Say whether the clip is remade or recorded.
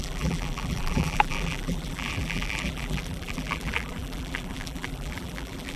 remade